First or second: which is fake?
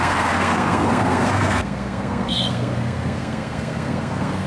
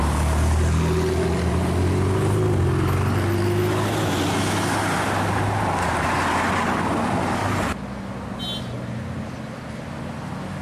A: first